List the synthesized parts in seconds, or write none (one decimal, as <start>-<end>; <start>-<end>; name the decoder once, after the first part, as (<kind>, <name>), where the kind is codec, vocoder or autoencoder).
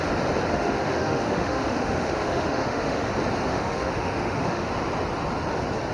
0.5-3.1 (autoencoder, DAC-VAE); 3.5-4.7